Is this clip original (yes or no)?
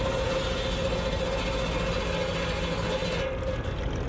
yes